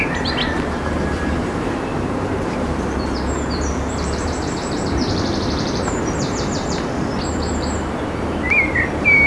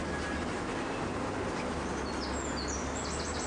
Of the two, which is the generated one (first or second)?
first